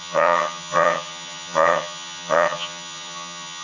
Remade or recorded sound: remade